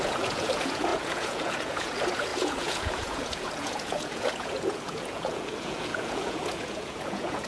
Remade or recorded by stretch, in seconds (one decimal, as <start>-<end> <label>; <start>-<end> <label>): 0.0-7.5 remade